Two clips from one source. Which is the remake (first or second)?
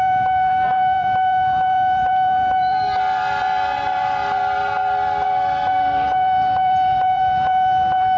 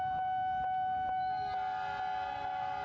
first